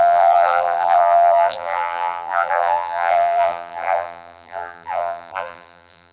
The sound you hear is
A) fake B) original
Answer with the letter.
A